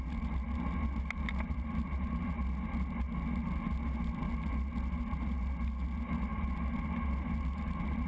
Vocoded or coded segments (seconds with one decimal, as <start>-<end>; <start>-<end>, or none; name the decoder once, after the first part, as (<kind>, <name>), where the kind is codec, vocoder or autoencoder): 1.3-2.3 (vocoder, BigVGAN v2); 6.3-7.3

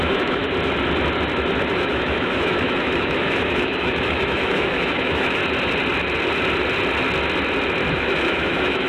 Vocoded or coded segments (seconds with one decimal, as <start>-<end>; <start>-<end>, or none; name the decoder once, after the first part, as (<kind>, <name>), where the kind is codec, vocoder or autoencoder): 0.0-0.4 (autoencoder, DAC-VAE); 1.7-5.4; 7.9-8.9

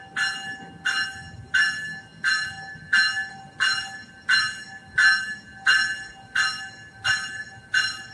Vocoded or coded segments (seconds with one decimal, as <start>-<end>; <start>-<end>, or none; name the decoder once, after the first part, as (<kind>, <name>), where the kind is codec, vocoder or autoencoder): none

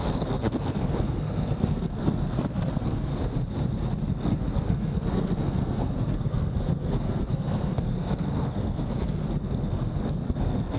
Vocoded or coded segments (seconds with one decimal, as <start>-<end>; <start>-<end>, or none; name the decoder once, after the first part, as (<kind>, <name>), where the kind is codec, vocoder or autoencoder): 0.0-3.1 (codec, SNAC); 4.1-10.8

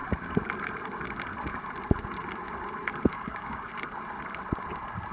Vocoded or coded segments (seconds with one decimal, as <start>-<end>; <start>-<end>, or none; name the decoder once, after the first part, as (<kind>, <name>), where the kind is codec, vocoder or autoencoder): 3.1-3.7 (codec, DAC)

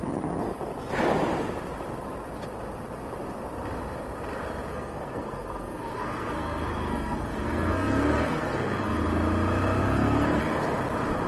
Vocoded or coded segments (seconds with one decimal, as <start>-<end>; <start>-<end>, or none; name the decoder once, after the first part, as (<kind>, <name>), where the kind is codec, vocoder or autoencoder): 4.7-9.0 (codec, SNAC); 9.8-10.4

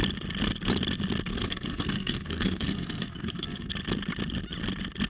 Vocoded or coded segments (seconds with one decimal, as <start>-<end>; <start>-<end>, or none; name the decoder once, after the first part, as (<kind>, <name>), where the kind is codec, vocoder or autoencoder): 1.3-3.7 (codec, SNAC)